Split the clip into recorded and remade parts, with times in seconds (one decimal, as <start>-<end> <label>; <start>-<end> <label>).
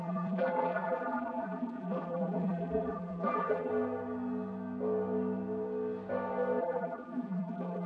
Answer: 0.0-3.7 remade; 3.7-6.6 recorded; 6.6-7.9 remade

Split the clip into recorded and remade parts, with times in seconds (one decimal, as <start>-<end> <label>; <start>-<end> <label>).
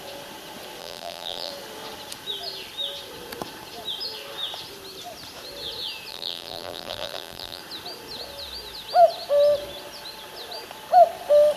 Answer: 0.0-0.8 recorded; 0.8-1.5 remade; 1.5-6.1 recorded; 6.1-7.6 remade; 7.6-11.6 recorded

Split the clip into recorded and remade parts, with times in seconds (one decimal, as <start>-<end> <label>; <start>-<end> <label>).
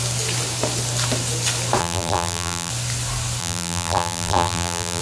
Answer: 0.0-1.8 recorded; 1.8-2.7 remade; 2.7-3.4 recorded; 3.4-5.0 remade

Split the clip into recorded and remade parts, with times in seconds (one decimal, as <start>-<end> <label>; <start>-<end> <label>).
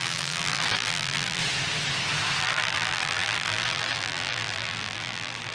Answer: 0.0-1.4 remade; 1.4-2.4 recorded; 2.4-5.5 remade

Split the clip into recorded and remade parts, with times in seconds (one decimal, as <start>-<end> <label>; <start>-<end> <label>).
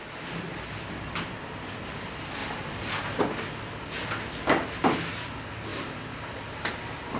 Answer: 0.0-2.4 recorded; 2.4-3.2 remade; 3.2-5.7 recorded; 5.7-6.7 remade; 6.7-7.2 recorded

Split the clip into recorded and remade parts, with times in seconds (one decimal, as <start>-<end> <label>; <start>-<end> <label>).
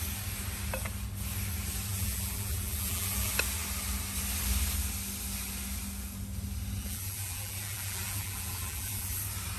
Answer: 0.0-1.9 recorded; 1.9-3.3 remade; 3.3-6.8 recorded; 6.8-9.2 remade; 9.2-9.6 recorded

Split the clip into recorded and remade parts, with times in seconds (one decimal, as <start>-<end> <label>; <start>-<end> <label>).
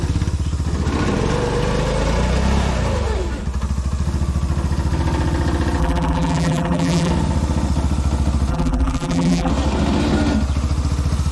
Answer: 0.0-5.8 recorded; 5.8-7.1 remade; 7.1-8.5 recorded; 8.5-9.5 remade; 9.5-11.3 recorded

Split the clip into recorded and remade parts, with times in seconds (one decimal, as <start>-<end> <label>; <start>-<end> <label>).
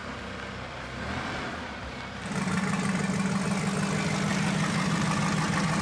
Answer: 0.0-3.0 remade; 3.0-4.3 recorded; 4.3-5.2 remade; 5.2-5.8 recorded